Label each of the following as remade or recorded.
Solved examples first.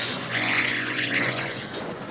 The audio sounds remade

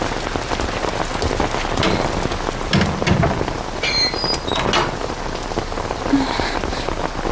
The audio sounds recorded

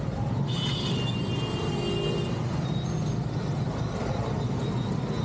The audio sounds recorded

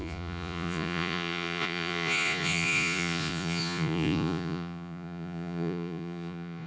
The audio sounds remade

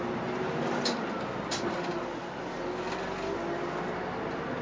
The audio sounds recorded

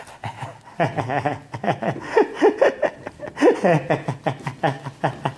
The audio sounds recorded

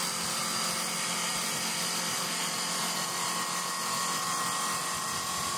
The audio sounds recorded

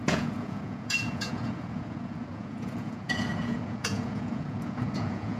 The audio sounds remade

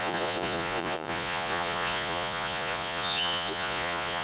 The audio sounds remade